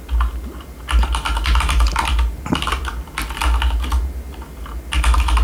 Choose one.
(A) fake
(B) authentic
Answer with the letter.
B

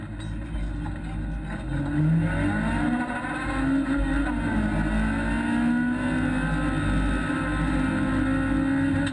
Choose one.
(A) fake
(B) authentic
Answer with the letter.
B